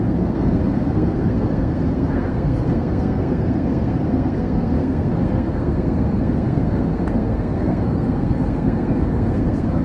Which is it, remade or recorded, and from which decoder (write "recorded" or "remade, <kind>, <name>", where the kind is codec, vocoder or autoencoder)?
remade, codec, SNAC